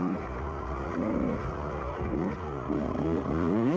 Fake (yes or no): yes